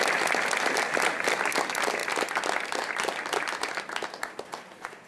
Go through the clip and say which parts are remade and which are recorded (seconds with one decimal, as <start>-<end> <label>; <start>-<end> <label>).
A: 0.0-5.1 recorded